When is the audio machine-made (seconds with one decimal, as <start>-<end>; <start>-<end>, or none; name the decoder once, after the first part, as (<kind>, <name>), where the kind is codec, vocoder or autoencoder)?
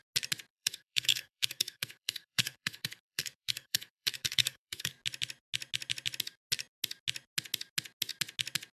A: 0.5-4.9 (codec, SNAC)